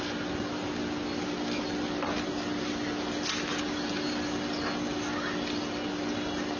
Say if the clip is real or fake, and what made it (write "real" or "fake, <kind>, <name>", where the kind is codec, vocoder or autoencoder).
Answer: real